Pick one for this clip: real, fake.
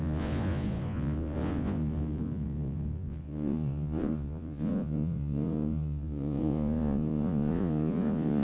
fake